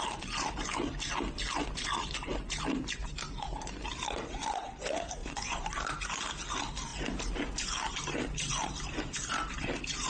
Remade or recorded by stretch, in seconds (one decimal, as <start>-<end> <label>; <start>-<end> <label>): 0.0-5.2 recorded; 5.2-5.7 remade; 5.7-10.1 recorded